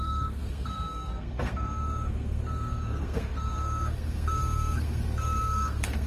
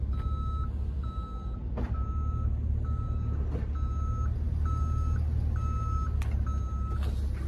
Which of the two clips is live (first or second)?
second